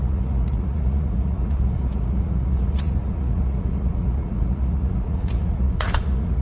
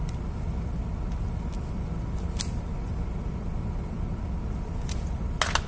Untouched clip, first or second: second